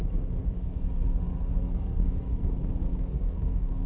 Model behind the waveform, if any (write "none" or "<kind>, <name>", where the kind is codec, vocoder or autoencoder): codec, SNAC